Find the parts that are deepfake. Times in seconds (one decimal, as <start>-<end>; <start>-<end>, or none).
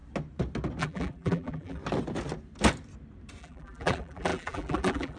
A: 0.8-1.8; 3.4-5.2